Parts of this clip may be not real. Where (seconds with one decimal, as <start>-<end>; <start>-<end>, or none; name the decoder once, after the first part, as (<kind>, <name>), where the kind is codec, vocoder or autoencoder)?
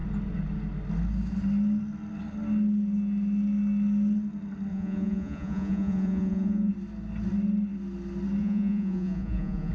4.7-6.7 (vocoder, Vocos); 8.4-9.7